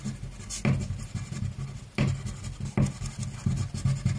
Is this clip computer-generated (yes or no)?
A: no